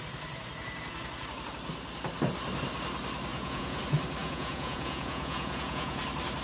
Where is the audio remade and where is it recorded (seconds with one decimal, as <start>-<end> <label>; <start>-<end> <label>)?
0.0-3.3 recorded; 3.3-3.8 remade; 3.8-4.2 recorded; 4.2-6.0 remade; 6.0-6.4 recorded